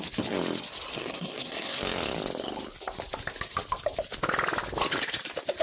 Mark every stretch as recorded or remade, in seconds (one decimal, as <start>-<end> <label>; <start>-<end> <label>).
0.0-0.9 recorded; 0.9-1.8 remade; 1.8-5.6 recorded